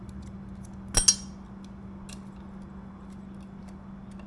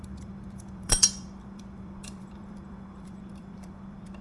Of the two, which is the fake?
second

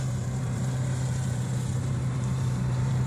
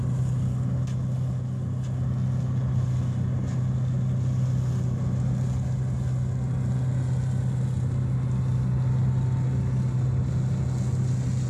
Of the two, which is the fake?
first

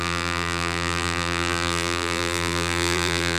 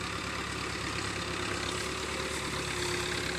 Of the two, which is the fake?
first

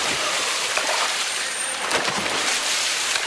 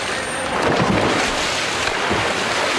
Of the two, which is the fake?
first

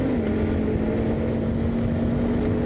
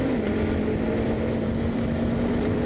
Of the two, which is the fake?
second